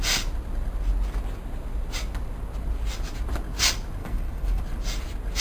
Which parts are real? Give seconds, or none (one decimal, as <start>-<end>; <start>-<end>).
0.0-4.0; 4.6-5.4